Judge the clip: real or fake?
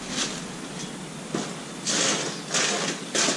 real